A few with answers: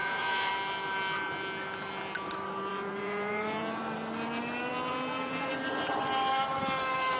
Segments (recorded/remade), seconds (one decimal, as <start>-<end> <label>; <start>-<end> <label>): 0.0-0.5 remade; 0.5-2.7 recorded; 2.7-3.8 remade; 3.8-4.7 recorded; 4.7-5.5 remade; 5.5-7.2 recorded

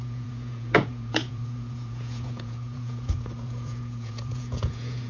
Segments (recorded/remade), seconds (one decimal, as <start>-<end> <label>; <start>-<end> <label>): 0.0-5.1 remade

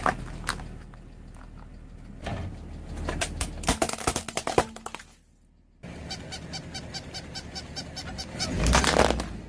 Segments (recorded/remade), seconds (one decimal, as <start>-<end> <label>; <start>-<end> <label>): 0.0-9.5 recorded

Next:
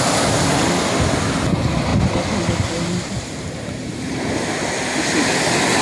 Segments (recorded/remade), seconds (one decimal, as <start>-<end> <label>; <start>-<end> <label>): 0.0-5.8 recorded

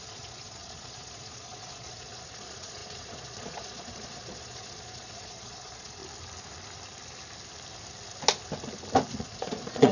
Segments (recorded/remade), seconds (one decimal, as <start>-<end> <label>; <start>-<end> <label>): 0.0-6.0 remade; 6.0-9.2 recorded; 9.2-9.9 remade